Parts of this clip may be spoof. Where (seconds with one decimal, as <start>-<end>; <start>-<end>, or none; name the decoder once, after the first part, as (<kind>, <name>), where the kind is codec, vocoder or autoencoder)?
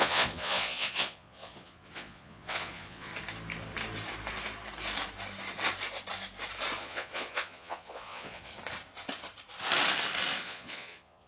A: 0.0-3.1 (vocoder, Vocos); 6.8-8.5; 10.4-11.3